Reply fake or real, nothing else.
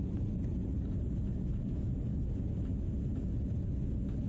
real